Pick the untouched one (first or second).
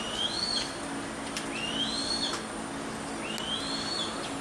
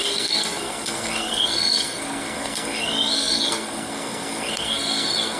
first